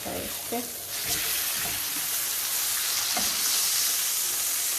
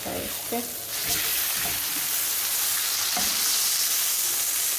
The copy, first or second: first